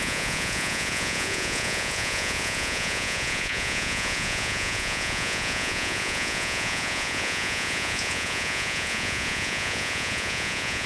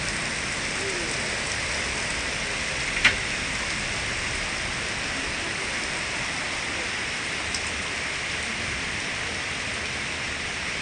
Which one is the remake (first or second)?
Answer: first